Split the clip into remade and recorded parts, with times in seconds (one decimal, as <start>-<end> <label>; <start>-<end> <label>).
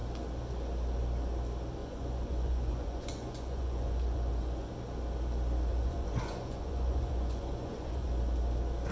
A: 0.0-1.8 recorded; 1.8-4.7 remade; 4.7-5.7 recorded; 5.7-8.1 remade; 8.1-8.9 recorded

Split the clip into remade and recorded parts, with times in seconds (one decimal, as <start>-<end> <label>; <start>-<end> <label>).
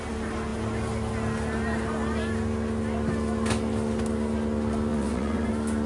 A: 0.0-4.9 recorded; 4.9-5.5 remade; 5.5-5.9 recorded